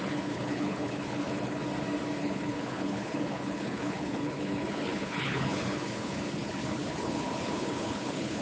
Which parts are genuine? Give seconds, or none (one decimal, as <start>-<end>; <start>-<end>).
1.6-2.2